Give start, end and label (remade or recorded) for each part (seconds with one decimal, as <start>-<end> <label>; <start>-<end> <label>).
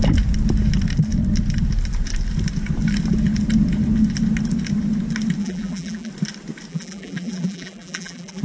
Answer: 0.0-5.4 recorded; 5.4-6.1 remade; 6.1-6.7 recorded; 6.7-8.4 remade